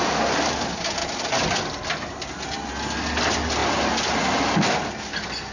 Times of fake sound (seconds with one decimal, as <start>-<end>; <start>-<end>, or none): none